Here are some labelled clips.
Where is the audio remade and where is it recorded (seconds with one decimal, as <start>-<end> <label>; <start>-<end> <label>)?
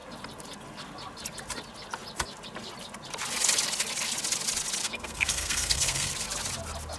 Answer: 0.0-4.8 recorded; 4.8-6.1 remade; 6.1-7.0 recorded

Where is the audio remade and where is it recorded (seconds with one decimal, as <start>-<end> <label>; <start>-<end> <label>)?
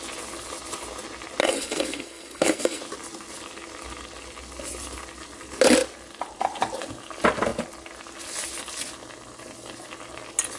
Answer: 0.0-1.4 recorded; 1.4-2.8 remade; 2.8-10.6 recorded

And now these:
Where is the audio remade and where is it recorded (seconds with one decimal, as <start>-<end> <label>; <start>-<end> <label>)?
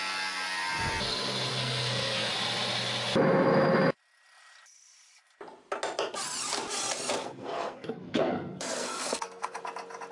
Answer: 0.0-1.5 recorded; 1.5-2.3 remade; 2.3-7.2 recorded; 7.2-9.6 remade; 9.6-10.1 recorded